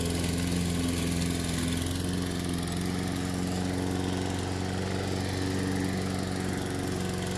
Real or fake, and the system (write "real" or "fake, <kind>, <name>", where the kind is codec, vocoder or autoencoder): real